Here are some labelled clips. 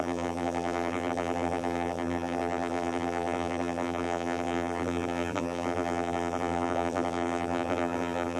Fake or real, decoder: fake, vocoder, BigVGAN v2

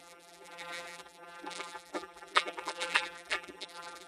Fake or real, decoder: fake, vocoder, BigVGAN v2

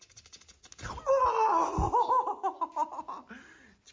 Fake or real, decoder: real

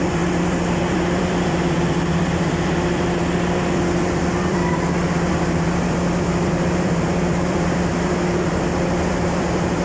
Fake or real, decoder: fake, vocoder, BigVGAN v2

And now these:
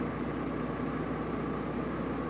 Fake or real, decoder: real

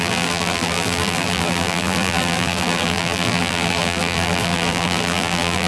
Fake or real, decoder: fake, vocoder, BigVGAN v2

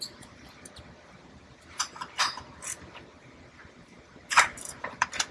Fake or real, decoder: fake, vocoder, BigVGAN v2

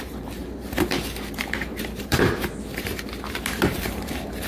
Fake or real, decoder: fake, vocoder, BigVGAN v2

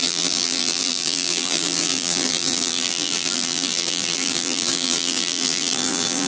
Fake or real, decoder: fake, vocoder, BigVGAN v2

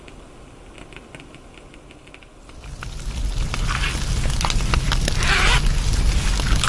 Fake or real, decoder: real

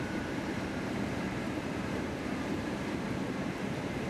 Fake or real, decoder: fake, vocoder, BigVGAN v2